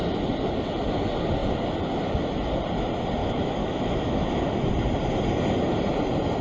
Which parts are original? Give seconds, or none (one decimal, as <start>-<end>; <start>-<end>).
0.0-3.2; 4.7-6.4